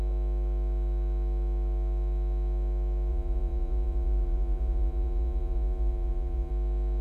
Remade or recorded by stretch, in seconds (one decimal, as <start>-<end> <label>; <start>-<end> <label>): 0.0-3.1 recorded; 3.1-6.5 remade; 6.5-7.0 recorded

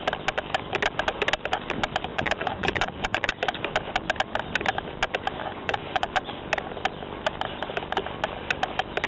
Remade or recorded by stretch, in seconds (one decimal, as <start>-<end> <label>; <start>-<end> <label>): 0.0-2.1 recorded; 2.1-3.3 remade; 3.3-5.4 recorded; 5.4-6.4 remade; 6.4-9.1 recorded

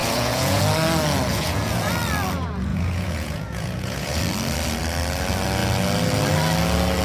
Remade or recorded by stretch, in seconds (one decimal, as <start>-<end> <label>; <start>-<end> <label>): 0.0-0.6 remade; 0.6-1.3 recorded; 1.3-1.9 remade; 1.9-2.7 recorded; 2.7-4.2 remade; 4.2-7.0 recorded

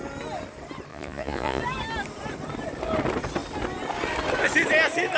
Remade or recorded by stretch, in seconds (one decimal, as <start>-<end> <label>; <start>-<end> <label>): 0.0-0.9 recorded; 0.9-1.6 remade; 1.6-5.2 recorded

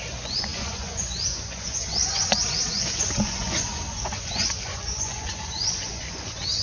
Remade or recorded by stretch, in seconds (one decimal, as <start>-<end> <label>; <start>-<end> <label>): 0.0-6.6 remade

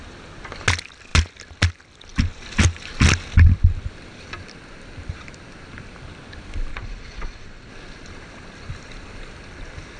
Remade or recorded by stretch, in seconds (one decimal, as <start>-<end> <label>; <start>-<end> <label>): 0.0-6.7 recorded; 6.7-7.7 remade; 7.7-10.0 recorded

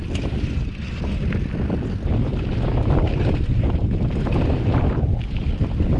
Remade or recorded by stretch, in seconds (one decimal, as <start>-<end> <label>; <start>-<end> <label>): 0.0-6.0 recorded